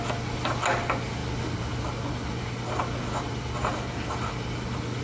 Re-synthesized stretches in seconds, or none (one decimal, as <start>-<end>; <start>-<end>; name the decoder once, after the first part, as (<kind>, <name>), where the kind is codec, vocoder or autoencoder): none